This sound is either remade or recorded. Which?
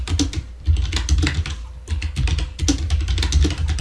recorded